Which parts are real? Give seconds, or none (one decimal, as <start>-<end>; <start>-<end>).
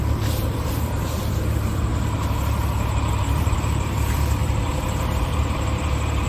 1.9-3.1